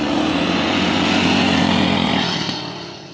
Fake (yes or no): yes